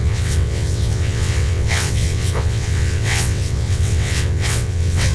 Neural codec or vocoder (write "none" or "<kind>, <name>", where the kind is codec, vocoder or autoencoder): vocoder, WaveNeXt